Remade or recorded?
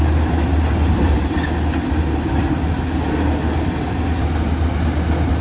recorded